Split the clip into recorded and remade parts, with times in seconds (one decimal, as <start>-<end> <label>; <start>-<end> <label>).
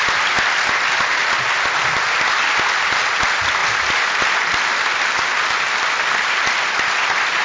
0.0-1.2 recorded; 1.2-1.7 remade; 1.7-3.6 recorded; 3.6-7.4 remade